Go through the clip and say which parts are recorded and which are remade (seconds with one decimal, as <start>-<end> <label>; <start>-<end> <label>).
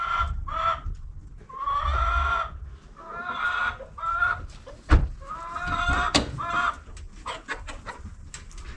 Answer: 0.0-4.1 recorded; 4.1-4.9 remade; 4.9-8.8 recorded